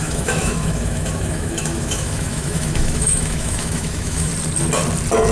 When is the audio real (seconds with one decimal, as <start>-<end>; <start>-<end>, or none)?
4.3-5.3